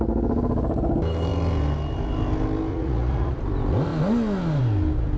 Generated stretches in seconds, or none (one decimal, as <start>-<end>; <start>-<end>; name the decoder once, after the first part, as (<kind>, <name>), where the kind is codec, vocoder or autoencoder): 2.7-3.3 (vocoder, Vocos)